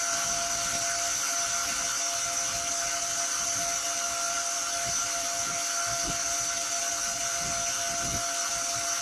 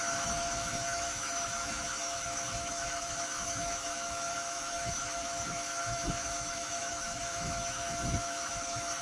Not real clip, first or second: second